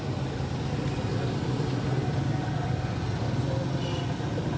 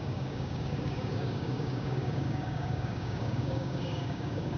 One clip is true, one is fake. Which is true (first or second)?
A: first